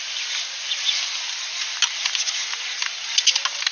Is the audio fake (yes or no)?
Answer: no